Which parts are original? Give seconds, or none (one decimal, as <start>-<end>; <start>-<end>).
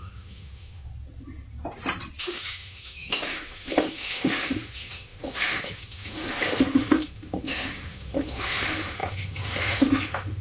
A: 0.9-2.2